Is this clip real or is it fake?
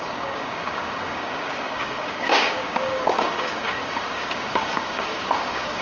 fake